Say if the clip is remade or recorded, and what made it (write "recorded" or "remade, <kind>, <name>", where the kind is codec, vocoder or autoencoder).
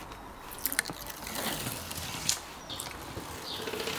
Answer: remade, vocoder, BigVGAN v2